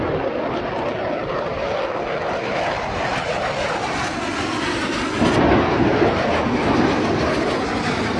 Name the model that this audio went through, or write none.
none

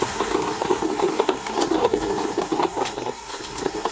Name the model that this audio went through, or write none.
codec, SNAC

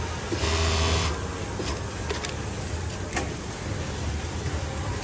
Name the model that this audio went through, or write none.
none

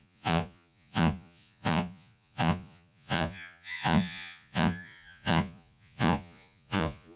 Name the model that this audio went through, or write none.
vocoder, Vocos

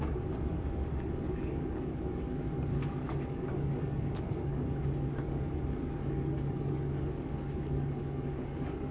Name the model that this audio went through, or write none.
codec, DAC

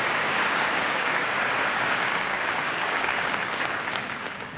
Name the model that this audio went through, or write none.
codec, DAC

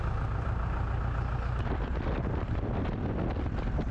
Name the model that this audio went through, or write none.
none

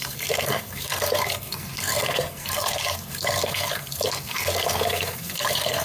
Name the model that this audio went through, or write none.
codec, SNAC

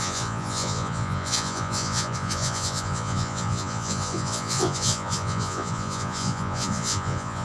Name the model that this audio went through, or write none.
vocoder, Vocos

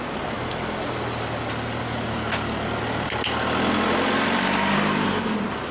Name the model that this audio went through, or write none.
none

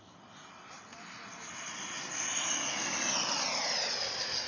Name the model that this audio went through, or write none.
none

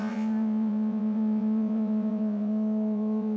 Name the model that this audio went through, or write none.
vocoder, Vocos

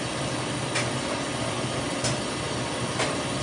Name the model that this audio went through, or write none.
none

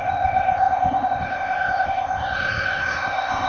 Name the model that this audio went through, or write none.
codec, ZipCodec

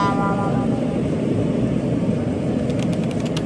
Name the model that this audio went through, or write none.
none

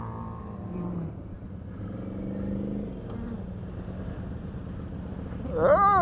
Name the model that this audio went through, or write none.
none